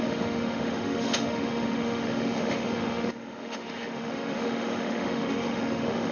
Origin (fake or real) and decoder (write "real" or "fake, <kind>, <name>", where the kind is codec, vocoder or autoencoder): fake, autoencoder, DAC-VAE